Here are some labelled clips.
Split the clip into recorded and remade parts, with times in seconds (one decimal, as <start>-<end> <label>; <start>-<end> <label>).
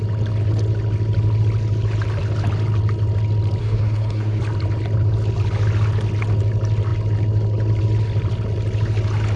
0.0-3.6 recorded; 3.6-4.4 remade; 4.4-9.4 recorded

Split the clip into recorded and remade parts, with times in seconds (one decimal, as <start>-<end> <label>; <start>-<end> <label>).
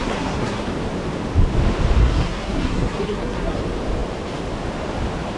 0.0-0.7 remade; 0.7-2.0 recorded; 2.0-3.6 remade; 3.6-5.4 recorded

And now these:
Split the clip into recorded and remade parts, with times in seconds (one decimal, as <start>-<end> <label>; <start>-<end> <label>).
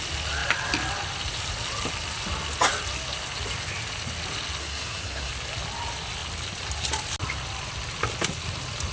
0.0-4.6 recorded; 4.6-5.3 remade; 5.3-8.9 recorded